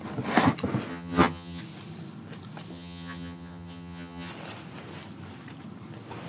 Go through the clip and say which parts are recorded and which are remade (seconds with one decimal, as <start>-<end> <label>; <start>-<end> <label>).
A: 0.0-0.9 recorded; 0.9-1.6 remade; 1.6-2.7 recorded; 2.7-4.3 remade; 4.3-6.3 recorded